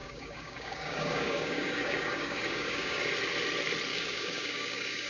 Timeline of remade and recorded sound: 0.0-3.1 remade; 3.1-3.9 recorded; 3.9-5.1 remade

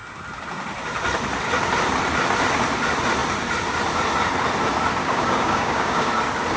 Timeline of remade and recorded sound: 0.0-5.0 recorded; 5.0-6.1 remade; 6.1-6.6 recorded

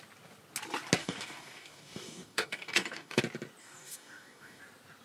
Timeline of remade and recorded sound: 0.0-1.0 recorded; 1.0-3.2 remade; 3.2-3.6 recorded; 3.6-4.6 remade; 4.6-5.0 recorded

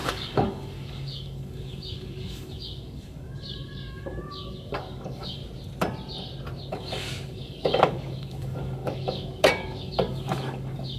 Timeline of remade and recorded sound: 0.0-5.4 remade; 5.4-6.7 recorded; 6.7-11.0 remade

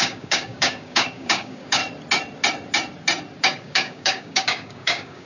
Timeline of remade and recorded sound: 0.0-1.8 remade; 1.8-3.4 recorded; 3.4-5.3 remade